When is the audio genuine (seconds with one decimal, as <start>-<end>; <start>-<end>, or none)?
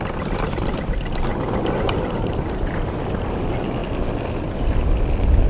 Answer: 0.0-1.3; 3.0-5.5